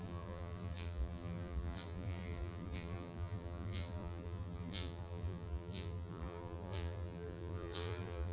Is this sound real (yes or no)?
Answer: no